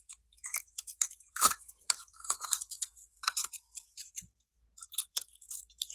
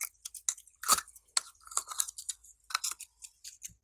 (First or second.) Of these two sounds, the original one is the second